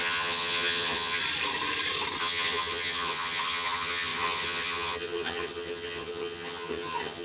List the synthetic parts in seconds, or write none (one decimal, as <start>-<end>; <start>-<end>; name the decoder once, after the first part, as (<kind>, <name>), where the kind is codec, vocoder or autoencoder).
0.0-1.2 (vocoder, HiFi-GAN); 2.2-7.2